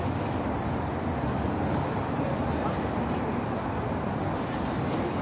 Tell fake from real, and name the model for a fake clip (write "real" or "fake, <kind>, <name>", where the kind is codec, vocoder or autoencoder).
real